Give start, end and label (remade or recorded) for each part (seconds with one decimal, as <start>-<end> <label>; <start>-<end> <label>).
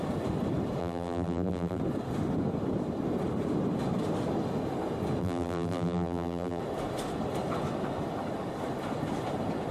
0.0-0.8 recorded; 0.8-1.8 remade; 1.8-5.2 recorded; 5.2-6.6 remade; 6.6-9.7 recorded